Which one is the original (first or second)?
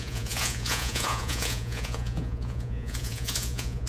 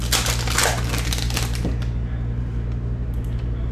second